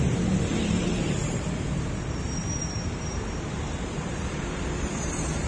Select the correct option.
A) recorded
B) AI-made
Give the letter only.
B